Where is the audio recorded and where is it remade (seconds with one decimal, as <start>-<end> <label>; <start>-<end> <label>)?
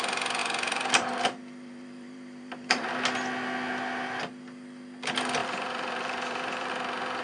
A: 0.0-0.4 recorded; 0.4-2.9 remade; 2.9-5.4 recorded; 5.4-6.7 remade; 6.7-7.2 recorded